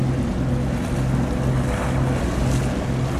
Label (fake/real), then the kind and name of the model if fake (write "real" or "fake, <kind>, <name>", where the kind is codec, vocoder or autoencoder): real